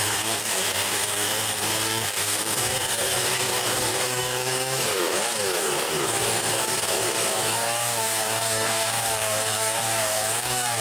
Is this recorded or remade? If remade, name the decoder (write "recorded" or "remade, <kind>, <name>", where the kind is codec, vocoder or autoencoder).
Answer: remade, codec, DAC